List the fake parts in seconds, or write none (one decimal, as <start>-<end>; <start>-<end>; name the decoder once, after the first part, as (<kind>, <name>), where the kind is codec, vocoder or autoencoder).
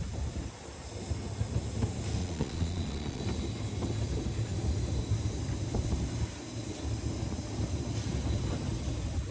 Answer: 2.2-3.2 (vocoder, Vocos)